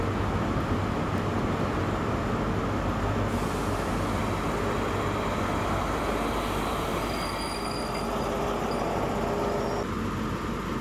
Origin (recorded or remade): recorded